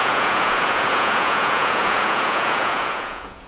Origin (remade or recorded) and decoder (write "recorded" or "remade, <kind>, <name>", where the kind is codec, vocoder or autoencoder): remade, vocoder, Vocos